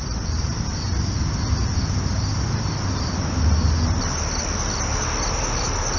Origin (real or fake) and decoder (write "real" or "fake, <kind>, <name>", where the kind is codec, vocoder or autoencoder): real